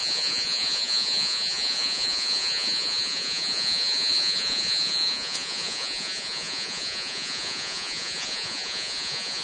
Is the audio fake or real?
fake